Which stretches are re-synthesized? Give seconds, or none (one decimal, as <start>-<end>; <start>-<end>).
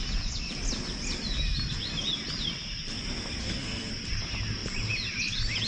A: 3.4-3.9